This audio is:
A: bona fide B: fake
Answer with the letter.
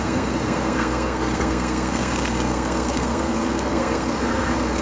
B